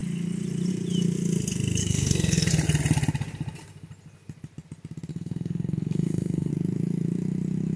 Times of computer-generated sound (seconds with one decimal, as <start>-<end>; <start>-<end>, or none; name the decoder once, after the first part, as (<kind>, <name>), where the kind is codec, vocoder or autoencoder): 1.8-2.5 (codec, SNAC); 5.1-6.5